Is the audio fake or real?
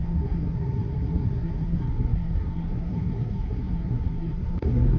fake